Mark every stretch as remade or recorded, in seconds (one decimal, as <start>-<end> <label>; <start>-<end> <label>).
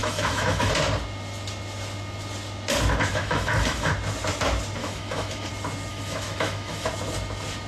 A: 0.0-0.7 remade; 0.7-3.1 recorded; 3.1-3.9 remade; 3.9-4.8 recorded; 4.8-5.5 remade; 5.5-5.9 recorded; 5.9-6.9 remade; 6.9-7.7 recorded